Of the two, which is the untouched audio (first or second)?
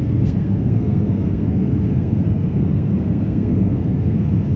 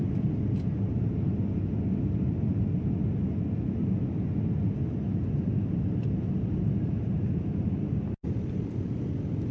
second